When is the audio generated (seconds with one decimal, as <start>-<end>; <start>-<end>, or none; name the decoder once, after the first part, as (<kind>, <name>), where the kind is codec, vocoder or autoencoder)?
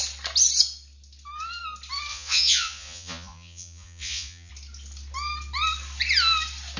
2.1-4.5 (vocoder, Vocos)